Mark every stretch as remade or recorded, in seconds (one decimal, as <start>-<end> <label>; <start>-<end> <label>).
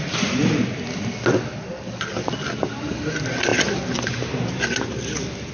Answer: 0.0-5.5 recorded